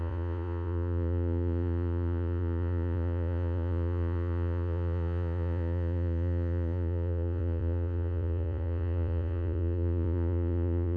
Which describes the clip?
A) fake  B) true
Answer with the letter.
A